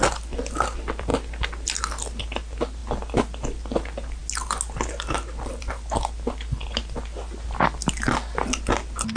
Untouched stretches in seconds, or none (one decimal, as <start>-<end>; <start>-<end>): 0.0-9.2